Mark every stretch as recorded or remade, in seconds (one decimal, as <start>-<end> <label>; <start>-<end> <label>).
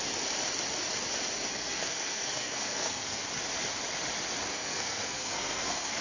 0.0-1.5 recorded; 1.5-3.2 remade; 3.2-4.5 recorded; 4.5-6.0 remade